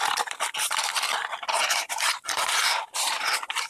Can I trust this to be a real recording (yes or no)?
yes